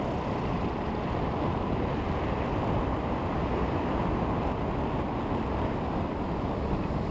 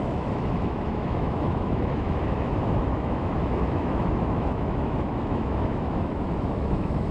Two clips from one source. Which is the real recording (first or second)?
first